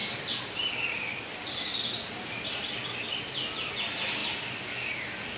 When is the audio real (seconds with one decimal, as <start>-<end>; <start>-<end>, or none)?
3.2-4.2